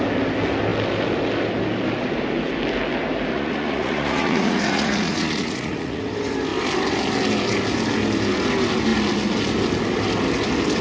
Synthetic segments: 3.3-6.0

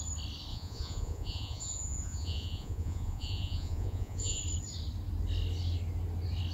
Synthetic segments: 0.5-4.4

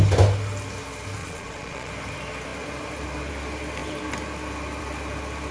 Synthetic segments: 1.2-1.9

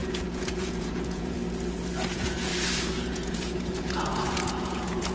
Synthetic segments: 0.0-1.4; 2.1-2.5; 3.1-5.1